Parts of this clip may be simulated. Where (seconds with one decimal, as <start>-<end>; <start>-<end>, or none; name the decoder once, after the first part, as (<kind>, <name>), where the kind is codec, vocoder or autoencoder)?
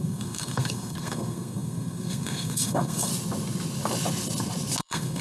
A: 0.0-3.1 (codec, SNAC); 4.8-5.2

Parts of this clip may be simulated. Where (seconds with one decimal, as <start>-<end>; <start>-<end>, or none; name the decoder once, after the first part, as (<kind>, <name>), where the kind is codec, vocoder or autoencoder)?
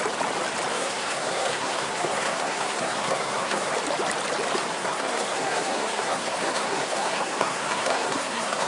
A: 0.7-3.7 (codec, SNAC); 4.7-8.7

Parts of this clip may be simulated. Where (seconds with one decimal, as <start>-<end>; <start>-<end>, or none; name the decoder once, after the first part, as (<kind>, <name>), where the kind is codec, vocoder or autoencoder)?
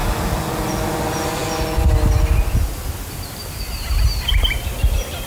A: none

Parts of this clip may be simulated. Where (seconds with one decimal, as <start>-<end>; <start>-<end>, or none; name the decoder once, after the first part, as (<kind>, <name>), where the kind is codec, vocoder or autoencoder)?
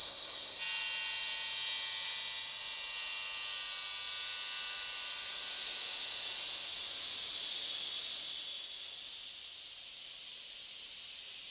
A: 0.0-0.6 (codec, SNAC)